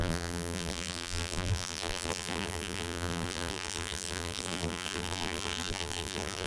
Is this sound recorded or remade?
remade